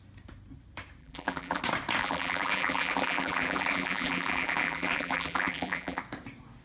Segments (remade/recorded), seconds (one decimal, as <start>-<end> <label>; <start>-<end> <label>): 0.0-1.0 recorded; 1.0-1.6 remade; 1.6-2.0 recorded; 2.0-6.0 remade; 6.0-6.6 recorded